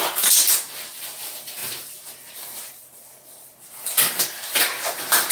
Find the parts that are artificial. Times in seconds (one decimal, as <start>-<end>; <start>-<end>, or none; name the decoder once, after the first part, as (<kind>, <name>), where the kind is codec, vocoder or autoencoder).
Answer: 0.0-5.3 (vocoder, BigVGAN v2)